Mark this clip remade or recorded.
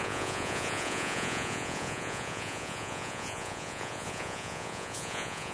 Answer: remade